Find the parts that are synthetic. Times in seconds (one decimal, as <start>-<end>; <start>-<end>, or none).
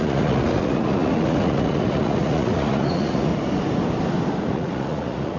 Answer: 0.0-3.3; 4.4-5.4